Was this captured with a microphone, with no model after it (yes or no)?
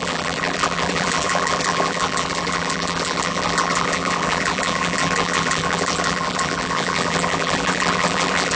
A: no